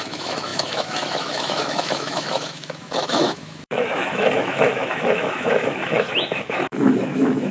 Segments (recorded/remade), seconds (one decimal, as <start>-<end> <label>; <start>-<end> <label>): 0.0-7.5 remade